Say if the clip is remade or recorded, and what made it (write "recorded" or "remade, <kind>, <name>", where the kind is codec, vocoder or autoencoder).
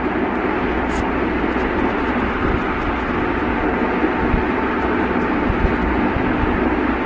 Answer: recorded